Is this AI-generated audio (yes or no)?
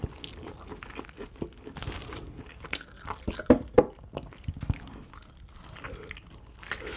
no